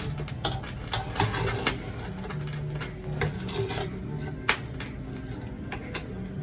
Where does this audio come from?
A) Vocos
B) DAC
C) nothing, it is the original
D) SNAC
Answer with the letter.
C